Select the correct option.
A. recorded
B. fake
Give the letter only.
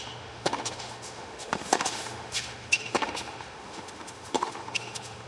B